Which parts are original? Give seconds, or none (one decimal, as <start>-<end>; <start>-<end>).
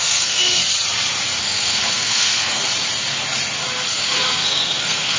0.6-1.4; 2.6-3.9